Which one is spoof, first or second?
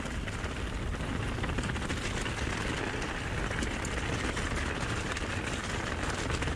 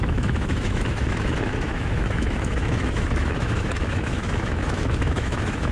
second